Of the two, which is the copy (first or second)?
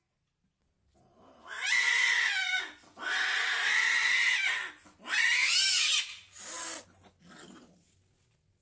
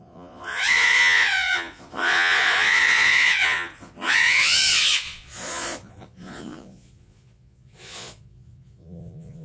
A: second